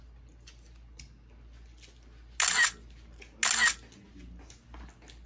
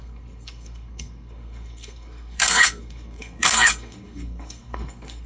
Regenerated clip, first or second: second